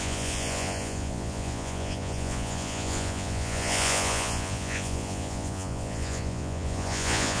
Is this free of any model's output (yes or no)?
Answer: no